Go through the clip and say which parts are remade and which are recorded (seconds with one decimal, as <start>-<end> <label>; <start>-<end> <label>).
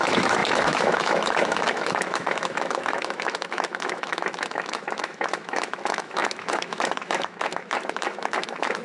0.0-8.8 remade